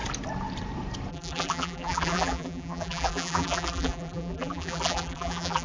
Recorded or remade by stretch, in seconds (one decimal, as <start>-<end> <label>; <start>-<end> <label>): 0.0-1.1 recorded; 1.1-5.6 remade